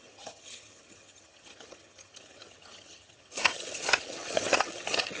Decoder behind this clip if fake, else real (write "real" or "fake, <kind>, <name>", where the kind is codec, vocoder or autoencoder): fake, vocoder, HiFi-GAN